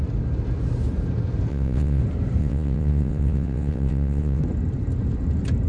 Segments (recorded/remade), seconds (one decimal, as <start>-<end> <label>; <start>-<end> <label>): 0.0-1.5 recorded; 1.5-2.0 remade; 2.0-2.4 recorded; 2.4-4.4 remade; 4.4-5.7 recorded